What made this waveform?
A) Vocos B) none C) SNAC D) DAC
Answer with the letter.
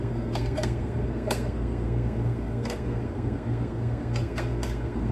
C